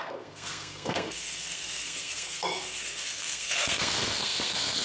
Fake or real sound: fake